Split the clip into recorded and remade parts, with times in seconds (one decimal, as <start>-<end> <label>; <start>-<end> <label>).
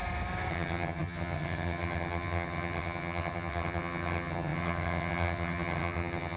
0.0-0.5 recorded; 0.5-6.4 remade